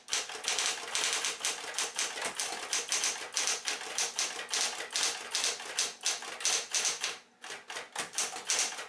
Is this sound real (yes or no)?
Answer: yes